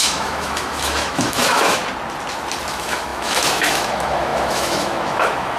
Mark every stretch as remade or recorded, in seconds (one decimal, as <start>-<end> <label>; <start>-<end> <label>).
0.0-1.8 remade; 1.8-2.7 recorded; 2.7-5.6 remade